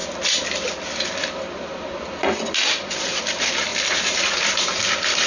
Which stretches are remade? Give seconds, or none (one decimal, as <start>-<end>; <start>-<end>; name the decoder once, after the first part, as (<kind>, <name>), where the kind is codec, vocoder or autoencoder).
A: 0.0-3.2 (vocoder, BigVGAN v2); 3.7-5.3